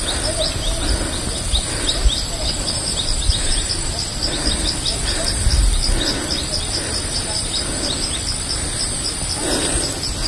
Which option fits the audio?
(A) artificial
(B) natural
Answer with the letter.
B